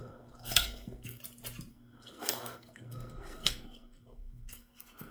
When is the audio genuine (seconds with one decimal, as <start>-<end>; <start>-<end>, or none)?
1.2-1.7